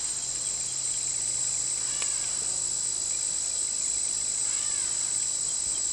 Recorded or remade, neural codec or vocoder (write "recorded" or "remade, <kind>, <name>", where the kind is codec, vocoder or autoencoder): recorded